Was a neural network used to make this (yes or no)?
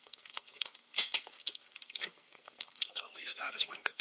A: yes